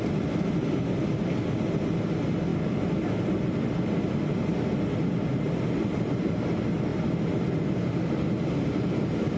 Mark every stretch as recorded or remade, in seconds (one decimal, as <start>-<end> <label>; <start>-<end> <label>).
0.0-9.4 recorded